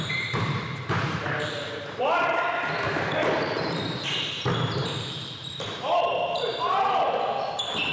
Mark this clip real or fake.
fake